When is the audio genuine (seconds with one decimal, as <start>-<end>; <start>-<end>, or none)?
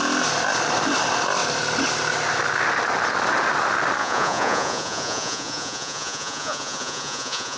0.0-4.0